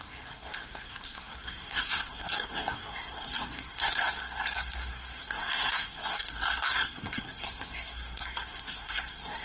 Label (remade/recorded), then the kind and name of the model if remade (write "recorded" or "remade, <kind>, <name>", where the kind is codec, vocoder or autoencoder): remade, codec, SNAC